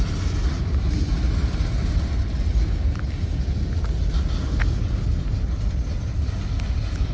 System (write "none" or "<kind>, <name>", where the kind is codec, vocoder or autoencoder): none